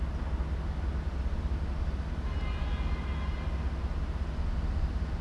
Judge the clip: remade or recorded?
recorded